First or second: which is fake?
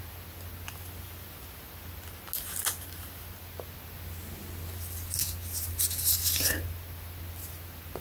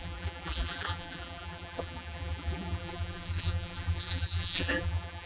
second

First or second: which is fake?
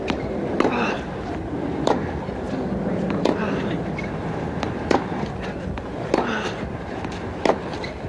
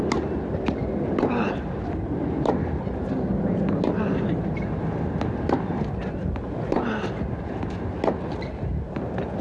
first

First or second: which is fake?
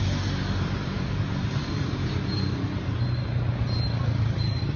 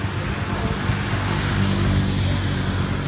first